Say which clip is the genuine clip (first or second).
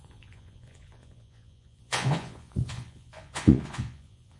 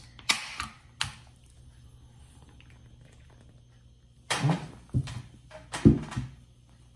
second